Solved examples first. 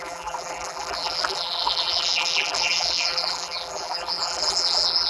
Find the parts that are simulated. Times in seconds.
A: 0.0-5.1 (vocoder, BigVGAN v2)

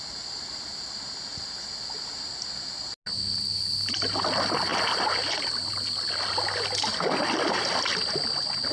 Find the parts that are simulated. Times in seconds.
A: none

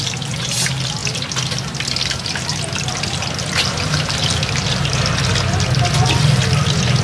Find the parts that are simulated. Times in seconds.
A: none

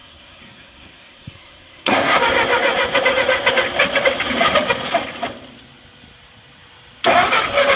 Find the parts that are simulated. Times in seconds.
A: 0.0-2.2 (codec, SNAC)

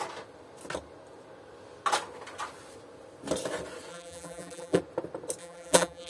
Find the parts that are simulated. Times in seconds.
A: 3.9-4.8 (vocoder, BigVGAN v2); 5.4-6.1